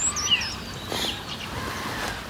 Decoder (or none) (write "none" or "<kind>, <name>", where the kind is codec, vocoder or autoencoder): none